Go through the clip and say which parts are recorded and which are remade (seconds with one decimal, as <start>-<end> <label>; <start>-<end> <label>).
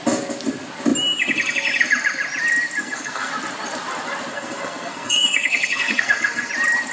0.0-2.8 recorded; 2.8-3.3 remade; 3.3-4.3 recorded; 4.3-6.5 remade; 6.5-6.9 recorded